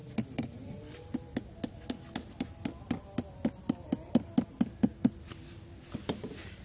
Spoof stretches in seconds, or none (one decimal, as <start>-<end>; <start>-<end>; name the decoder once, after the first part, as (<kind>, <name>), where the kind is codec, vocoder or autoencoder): none